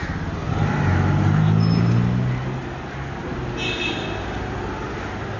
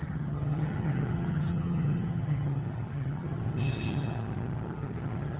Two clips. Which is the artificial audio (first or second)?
second